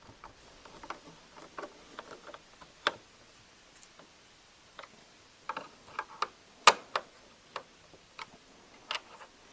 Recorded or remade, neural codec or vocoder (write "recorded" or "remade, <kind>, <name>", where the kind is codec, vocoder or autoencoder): recorded